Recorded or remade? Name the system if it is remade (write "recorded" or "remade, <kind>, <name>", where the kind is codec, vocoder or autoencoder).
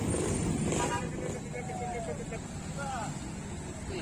recorded